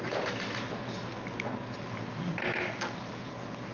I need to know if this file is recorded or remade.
recorded